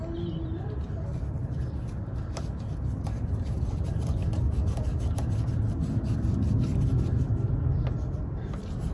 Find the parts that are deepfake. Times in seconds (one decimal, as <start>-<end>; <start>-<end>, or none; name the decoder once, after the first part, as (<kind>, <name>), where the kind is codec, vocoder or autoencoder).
none